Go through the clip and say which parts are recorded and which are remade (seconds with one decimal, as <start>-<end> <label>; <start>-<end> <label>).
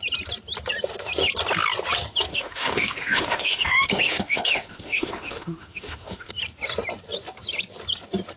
0.0-2.3 recorded; 2.3-6.3 remade; 6.3-8.4 recorded